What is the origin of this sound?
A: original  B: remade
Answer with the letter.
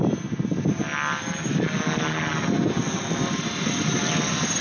A